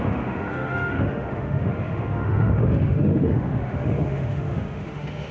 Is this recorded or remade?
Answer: remade